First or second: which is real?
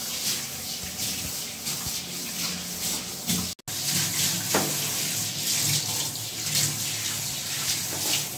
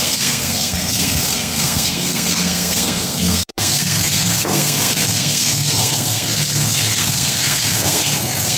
first